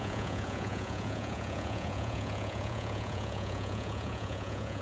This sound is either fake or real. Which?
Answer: fake